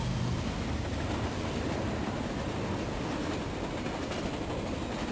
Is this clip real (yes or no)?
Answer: yes